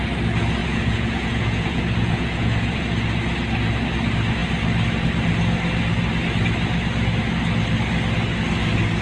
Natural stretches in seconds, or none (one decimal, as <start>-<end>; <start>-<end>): 0.0-0.6; 2.8-9.0